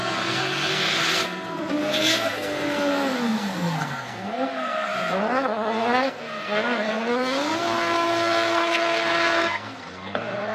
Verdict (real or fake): fake